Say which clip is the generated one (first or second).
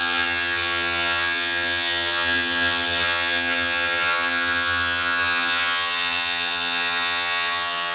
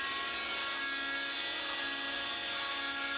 first